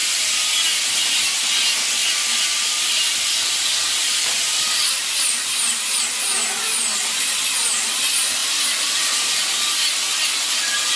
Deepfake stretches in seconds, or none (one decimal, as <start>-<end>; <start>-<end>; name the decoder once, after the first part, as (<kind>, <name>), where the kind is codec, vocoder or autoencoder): 2.0-6.0 (vocoder, BigVGAN v2); 8.4-9.3